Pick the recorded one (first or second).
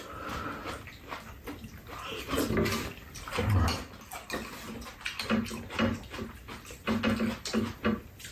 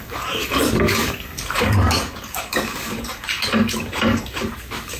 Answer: first